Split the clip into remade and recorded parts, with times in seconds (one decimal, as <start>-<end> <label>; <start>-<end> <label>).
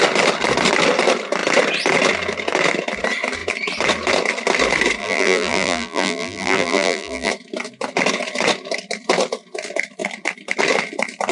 0.0-5.0 recorded; 5.0-7.3 remade; 7.3-11.3 recorded